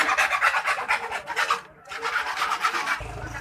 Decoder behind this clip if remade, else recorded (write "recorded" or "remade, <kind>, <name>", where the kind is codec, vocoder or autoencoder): recorded